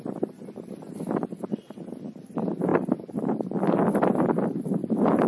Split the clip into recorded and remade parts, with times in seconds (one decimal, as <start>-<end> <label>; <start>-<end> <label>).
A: 0.0-5.3 recorded